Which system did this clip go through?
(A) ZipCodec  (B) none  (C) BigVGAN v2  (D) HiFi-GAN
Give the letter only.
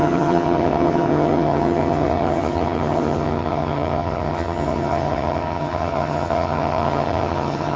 D